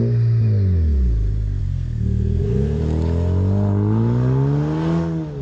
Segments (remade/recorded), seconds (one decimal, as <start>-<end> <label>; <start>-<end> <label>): 0.0-1.6 recorded; 1.6-2.8 remade; 2.8-5.4 recorded